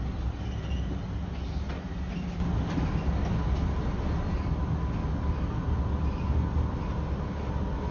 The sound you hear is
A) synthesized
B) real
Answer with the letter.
B